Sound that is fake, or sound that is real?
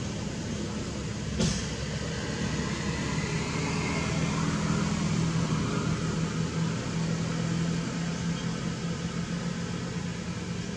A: real